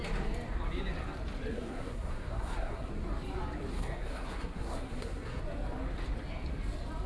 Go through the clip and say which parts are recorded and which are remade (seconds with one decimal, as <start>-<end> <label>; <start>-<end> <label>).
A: 0.0-1.5 recorded; 1.5-2.9 remade; 2.9-3.7 recorded; 3.7-5.4 remade; 5.4-7.1 recorded